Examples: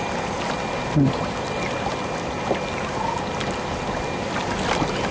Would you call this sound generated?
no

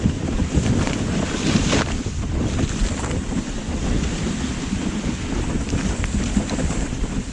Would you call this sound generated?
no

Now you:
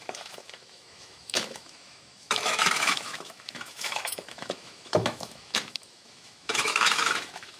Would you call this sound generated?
yes